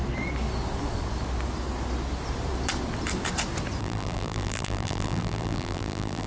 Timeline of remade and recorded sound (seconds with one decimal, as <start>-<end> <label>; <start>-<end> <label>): 0.0-3.8 recorded; 3.8-6.3 remade